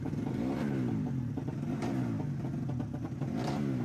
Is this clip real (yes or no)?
yes